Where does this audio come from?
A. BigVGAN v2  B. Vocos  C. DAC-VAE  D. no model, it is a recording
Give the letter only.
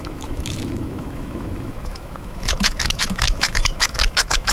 C